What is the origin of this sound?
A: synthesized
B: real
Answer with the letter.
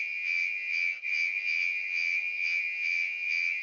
A